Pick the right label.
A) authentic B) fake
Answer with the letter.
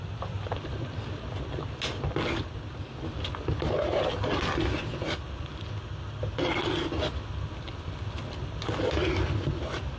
A